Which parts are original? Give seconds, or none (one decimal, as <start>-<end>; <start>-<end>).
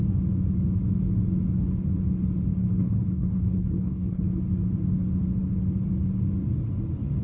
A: 0.0-2.6; 4.2-7.2